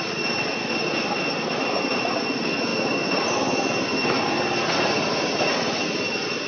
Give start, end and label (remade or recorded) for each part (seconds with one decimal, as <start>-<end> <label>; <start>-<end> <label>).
0.0-6.5 recorded